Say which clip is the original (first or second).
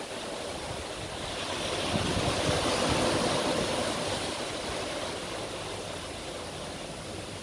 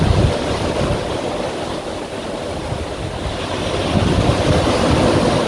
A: second